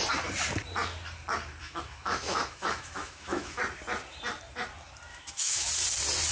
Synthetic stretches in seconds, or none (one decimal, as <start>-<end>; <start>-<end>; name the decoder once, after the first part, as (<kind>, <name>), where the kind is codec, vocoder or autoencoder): 1.6-3.6 (autoencoder, DAC-VAE); 5.1-5.7